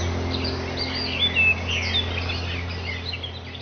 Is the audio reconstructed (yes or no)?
no